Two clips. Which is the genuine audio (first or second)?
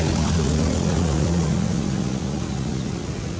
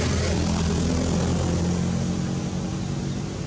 second